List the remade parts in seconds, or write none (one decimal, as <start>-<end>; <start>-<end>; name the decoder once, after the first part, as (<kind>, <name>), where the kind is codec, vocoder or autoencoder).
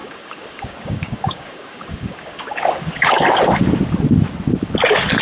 0.0-3.1 (codec, DAC)